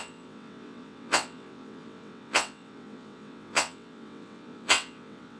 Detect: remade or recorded remade